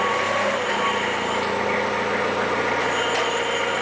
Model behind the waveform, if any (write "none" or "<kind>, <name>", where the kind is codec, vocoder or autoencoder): none